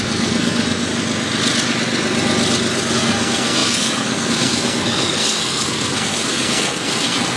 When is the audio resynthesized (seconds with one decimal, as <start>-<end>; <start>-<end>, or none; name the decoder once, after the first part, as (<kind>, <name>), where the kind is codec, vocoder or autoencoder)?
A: 0.0-0.9 (codec, SNAC); 2.9-7.4